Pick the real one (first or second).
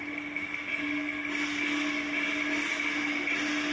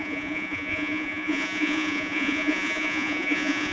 first